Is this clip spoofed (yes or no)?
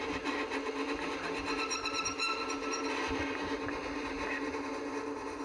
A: no